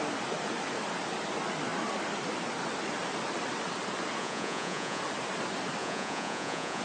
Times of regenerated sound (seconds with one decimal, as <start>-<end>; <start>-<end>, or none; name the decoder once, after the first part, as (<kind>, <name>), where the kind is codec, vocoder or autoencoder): 4.2-5.0 (vocoder, Vocos); 5.8-6.8